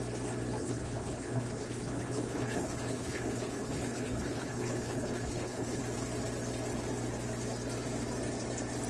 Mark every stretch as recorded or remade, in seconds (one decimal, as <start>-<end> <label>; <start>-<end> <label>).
0.0-0.6 recorded; 0.6-5.8 remade; 5.8-8.9 recorded